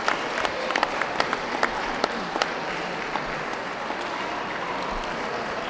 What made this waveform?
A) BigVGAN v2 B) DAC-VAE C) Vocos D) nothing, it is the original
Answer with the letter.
D